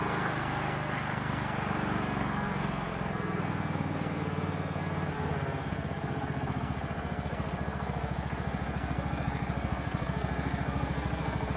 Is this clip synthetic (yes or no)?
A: yes